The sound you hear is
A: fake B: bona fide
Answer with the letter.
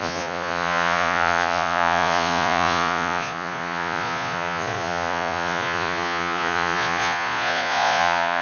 A